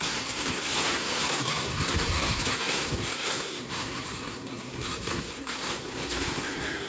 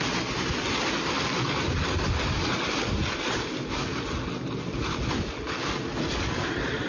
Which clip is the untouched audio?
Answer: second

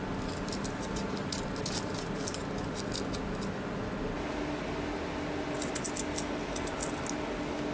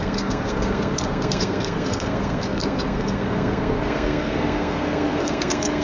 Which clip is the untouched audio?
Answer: first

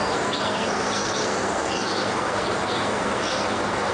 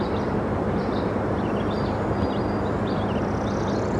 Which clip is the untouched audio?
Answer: second